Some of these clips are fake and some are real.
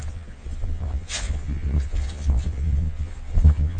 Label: fake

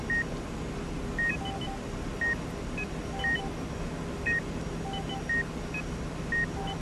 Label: real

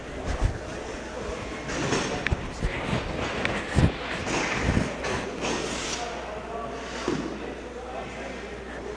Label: real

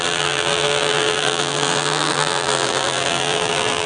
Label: fake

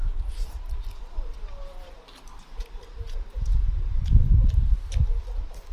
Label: real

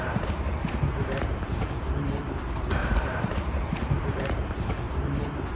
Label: fake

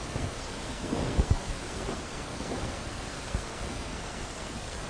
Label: fake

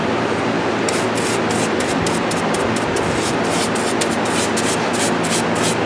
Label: real